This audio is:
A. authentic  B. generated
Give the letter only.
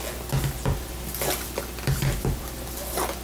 A